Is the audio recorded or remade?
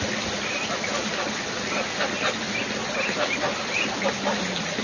recorded